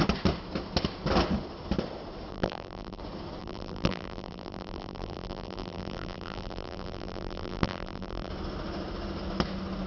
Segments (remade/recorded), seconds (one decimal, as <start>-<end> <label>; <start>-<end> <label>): 0.0-2.3 recorded; 2.3-3.0 remade; 3.0-3.4 recorded; 3.4-8.3 remade; 8.3-9.9 recorded